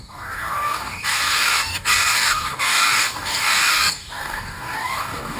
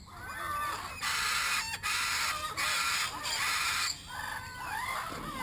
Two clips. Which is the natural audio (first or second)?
second